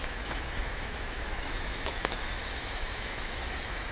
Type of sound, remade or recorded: remade